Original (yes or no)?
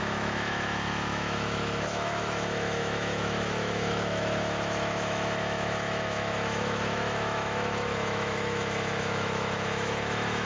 no